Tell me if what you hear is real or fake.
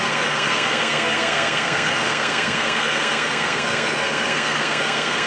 fake